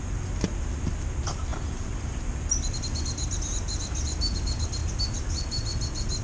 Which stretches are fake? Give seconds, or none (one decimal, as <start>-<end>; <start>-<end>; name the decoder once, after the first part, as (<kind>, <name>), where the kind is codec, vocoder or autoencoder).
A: none